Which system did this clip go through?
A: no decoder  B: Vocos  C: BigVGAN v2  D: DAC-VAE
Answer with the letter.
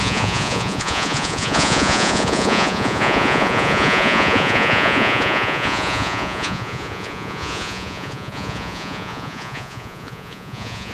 B